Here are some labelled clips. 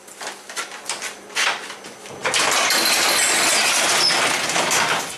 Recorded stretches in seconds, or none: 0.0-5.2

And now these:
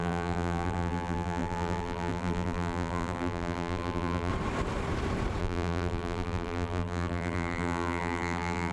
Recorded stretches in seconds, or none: 4.3-5.4

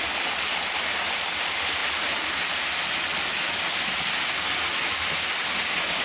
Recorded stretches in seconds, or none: 0.0-6.0

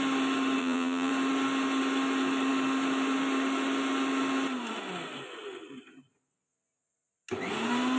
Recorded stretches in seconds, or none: 0.0-0.6; 1.1-8.0

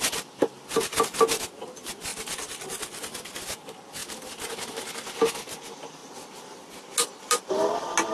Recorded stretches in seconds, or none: 0.0-2.1; 3.0-8.1

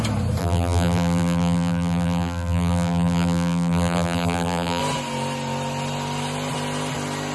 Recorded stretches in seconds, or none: 0.0-0.4; 4.8-7.3

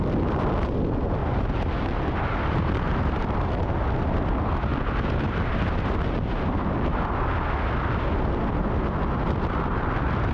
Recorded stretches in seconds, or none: 0.0-1.2; 4.2-4.7; 7.0-10.3

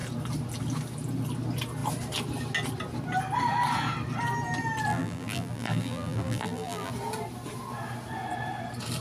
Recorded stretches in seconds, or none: 0.0-4.9; 6.9-9.0